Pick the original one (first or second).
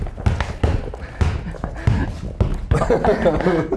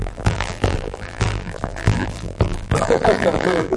first